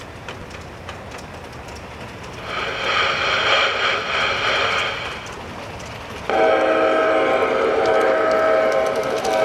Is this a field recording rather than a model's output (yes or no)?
yes